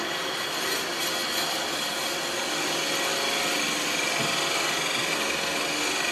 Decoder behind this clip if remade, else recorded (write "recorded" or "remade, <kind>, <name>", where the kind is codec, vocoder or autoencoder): recorded